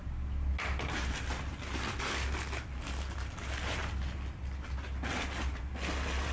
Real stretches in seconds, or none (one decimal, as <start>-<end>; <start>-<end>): 0.0-6.3